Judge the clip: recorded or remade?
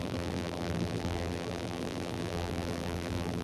remade